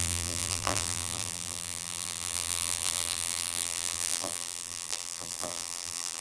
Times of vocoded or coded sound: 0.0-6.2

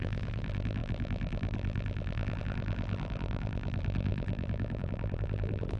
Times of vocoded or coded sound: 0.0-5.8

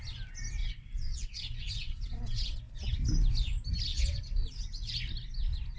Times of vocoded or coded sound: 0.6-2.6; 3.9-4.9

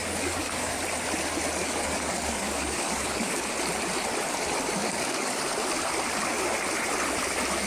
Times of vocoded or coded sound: 0.0-0.7; 1.6-3.4; 4.8-5.4

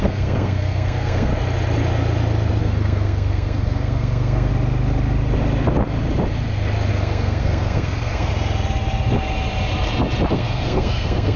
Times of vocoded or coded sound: 0.0-1.3; 2.6-4.5; 6.9-8.3; 10.3-11.4